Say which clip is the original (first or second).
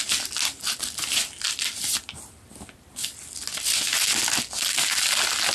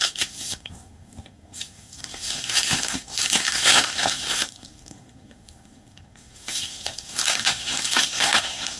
first